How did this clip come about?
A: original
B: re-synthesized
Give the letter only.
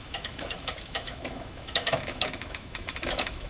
B